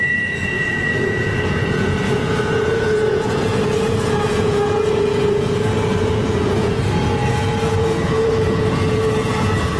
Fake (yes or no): yes